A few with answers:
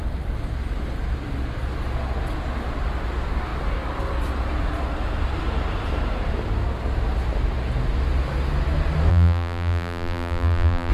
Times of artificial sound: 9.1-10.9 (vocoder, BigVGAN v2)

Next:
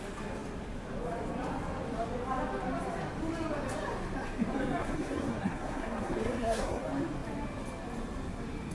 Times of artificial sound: 4.8-6.8 (codec, SNAC)